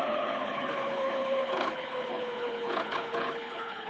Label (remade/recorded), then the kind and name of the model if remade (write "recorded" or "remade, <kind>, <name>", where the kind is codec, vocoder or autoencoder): remade, codec, HILCodec